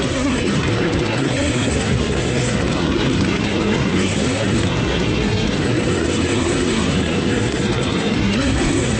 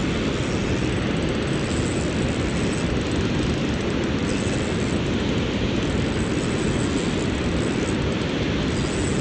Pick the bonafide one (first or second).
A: second